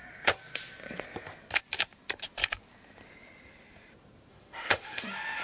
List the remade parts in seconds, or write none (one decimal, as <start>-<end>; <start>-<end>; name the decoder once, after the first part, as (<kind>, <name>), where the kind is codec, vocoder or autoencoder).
4.3-5.0 (autoencoder, DAC-VAE)